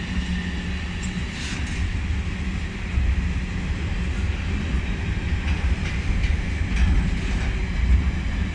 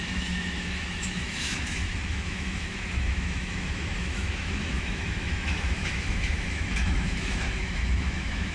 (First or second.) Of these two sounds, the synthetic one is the second